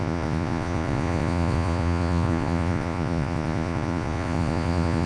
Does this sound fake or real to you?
fake